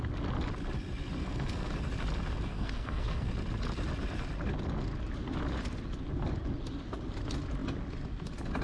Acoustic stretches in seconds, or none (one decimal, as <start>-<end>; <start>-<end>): 0.0-1.2; 1.7-2.5; 3.3-8.6